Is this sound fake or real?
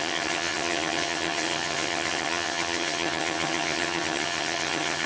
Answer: fake